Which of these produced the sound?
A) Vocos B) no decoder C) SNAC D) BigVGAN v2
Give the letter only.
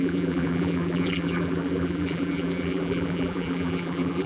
D